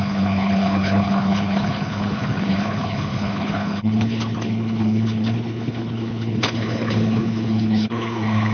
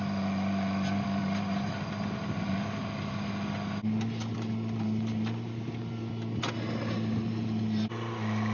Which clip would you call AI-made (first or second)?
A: first